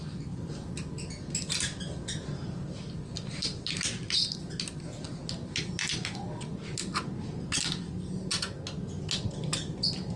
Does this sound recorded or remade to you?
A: recorded